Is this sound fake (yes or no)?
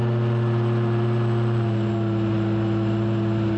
no